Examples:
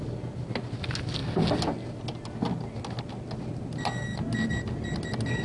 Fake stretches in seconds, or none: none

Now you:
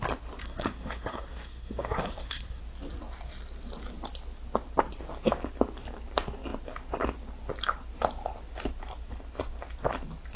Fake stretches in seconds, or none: 0.4-2.6

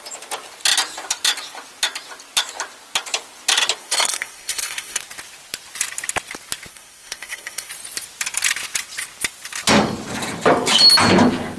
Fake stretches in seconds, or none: 3.8-5.0; 6.7-7.7

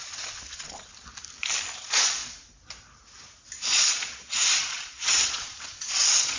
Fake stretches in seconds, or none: 0.0-0.9; 1.8-2.2; 3.6-6.4